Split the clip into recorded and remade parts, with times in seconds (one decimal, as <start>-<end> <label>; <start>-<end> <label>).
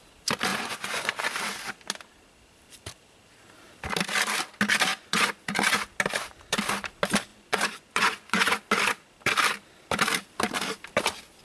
0.0-0.5 recorded; 0.5-1.1 remade; 1.1-4.9 recorded; 4.9-5.6 remade; 5.6-7.3 recorded; 7.3-8.6 remade; 8.6-11.4 recorded